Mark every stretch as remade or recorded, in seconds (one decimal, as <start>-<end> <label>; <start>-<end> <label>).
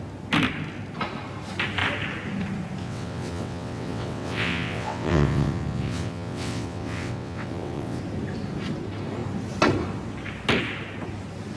0.0-2.8 recorded; 2.8-8.0 remade; 8.0-11.6 recorded